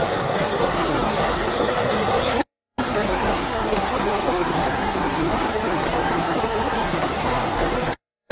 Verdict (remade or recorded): remade